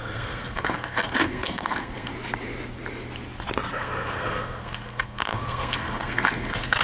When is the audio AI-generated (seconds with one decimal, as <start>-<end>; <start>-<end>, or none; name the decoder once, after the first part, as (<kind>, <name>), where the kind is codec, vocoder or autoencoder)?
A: 0.0-2.1 (codec, SNAC); 3.7-6.8